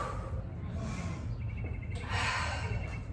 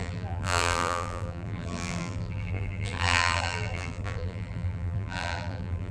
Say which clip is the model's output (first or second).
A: second